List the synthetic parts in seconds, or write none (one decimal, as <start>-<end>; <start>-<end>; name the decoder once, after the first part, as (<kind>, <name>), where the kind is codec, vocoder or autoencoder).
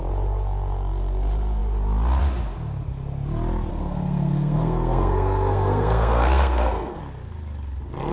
3.7-7.0 (codec, SNAC)